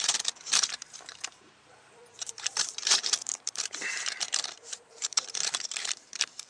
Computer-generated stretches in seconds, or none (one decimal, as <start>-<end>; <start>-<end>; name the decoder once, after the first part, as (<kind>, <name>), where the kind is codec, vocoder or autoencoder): 0.0-6.5 (vocoder, BigVGAN v2)